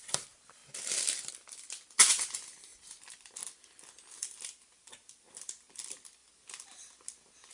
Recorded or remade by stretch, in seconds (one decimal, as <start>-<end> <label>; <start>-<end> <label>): 0.0-0.6 remade; 0.6-1.3 recorded; 1.3-6.2 remade; 6.2-7.5 recorded